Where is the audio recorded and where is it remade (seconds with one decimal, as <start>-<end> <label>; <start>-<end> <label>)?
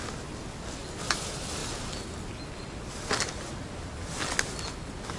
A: 0.0-5.2 recorded